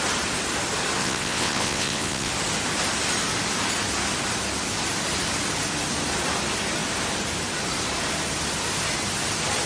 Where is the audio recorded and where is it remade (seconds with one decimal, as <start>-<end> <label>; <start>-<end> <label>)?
0.0-1.0 recorded; 1.0-2.3 remade; 2.3-9.7 recorded